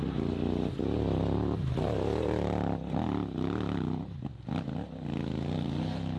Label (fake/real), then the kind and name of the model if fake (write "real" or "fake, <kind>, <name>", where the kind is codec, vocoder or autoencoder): real